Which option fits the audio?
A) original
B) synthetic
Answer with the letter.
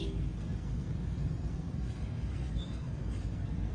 B